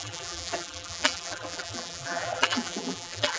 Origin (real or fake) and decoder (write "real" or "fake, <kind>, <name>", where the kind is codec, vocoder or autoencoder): fake, vocoder, BigVGAN v2